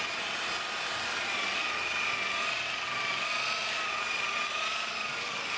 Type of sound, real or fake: real